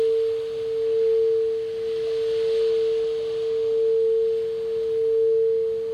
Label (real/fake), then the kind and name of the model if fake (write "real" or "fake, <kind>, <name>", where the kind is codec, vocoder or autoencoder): real